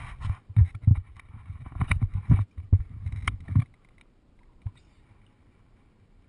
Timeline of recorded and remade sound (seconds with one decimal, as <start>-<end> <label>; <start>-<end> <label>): 0.0-6.3 recorded